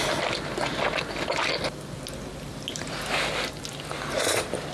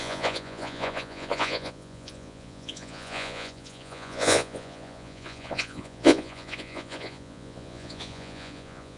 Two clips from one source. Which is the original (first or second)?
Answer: first